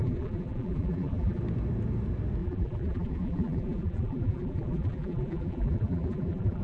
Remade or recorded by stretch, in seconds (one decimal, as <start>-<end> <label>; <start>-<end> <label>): 0.0-1.4 remade; 1.4-2.4 recorded; 2.4-6.6 remade